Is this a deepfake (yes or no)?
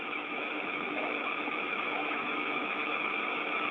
yes